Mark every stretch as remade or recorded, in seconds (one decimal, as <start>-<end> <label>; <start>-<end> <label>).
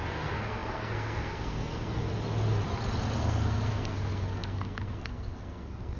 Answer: 0.0-2.1 remade; 2.1-3.2 recorded; 3.2-6.0 remade